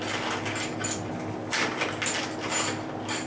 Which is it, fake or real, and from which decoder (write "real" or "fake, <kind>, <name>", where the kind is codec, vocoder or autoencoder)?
real